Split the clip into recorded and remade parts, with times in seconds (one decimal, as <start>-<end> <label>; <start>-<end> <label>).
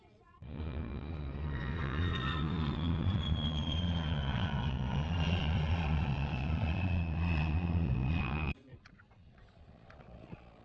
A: 0.0-10.6 remade